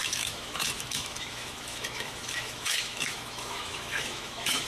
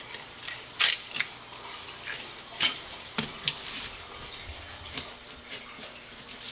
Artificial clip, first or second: first